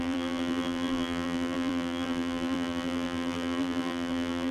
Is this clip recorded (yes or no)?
no